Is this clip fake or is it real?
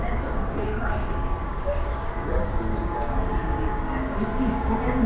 fake